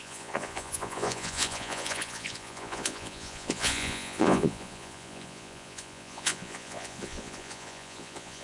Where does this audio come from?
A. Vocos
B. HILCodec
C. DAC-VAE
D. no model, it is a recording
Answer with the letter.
A